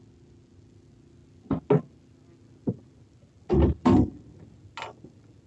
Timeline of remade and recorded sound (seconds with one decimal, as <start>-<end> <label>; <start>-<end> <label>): 0.0-5.5 recorded